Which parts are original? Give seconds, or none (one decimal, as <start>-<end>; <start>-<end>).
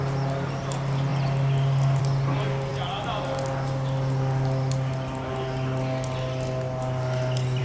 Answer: 0.0-7.6